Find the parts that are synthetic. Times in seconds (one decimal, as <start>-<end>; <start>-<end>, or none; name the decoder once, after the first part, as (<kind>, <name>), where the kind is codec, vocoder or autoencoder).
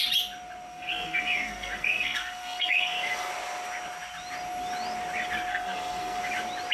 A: 0.7-3.3 (codec, SNAC); 5.5-6.2